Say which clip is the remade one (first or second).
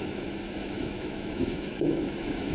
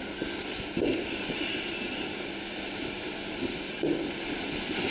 first